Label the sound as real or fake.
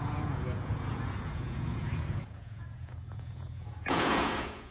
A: fake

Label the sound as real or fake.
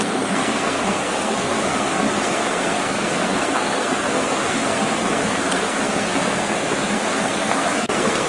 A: fake